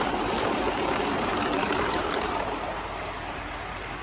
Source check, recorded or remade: remade